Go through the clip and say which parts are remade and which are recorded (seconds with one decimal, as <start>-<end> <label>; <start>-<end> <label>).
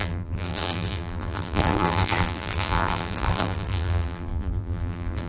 0.0-5.3 remade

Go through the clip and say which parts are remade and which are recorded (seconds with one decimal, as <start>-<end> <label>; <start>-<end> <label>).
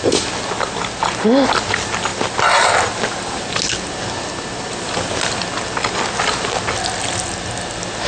0.0-8.1 recorded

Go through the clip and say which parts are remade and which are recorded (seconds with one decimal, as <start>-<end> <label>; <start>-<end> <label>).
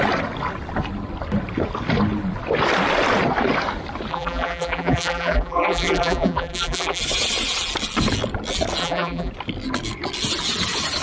0.0-4.1 recorded; 4.1-7.0 remade; 7.0-8.8 recorded; 8.8-9.3 remade; 9.3-11.0 recorded